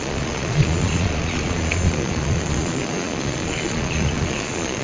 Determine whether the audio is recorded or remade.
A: remade